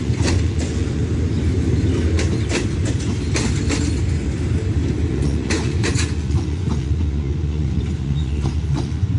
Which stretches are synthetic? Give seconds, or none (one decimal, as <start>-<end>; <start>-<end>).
0.0-1.0; 5.1-9.2